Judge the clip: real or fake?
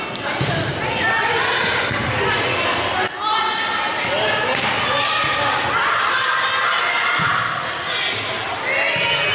real